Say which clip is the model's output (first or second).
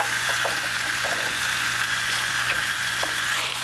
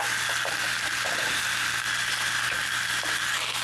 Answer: first